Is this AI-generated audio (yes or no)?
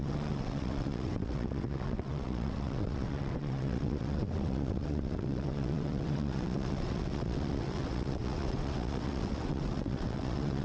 yes